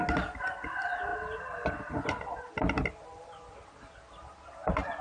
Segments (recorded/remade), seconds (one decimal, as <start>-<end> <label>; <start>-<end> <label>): 0.0-5.0 recorded